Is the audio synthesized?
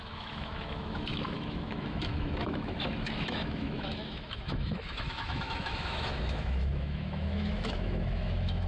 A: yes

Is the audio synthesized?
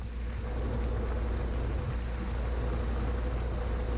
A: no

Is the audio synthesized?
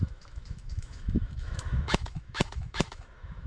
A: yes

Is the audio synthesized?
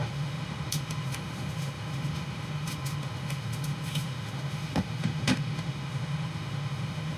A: yes